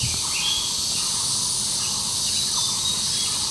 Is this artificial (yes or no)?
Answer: no